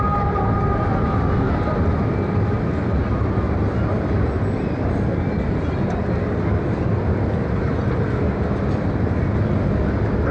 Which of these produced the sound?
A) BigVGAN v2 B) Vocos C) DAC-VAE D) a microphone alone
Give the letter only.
D